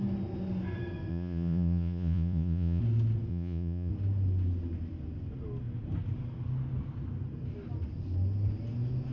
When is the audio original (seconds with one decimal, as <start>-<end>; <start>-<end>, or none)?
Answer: 0.0-1.1; 2.8-3.3; 3.9-9.1